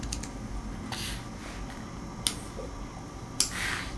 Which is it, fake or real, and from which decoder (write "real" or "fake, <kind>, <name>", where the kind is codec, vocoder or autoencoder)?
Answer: real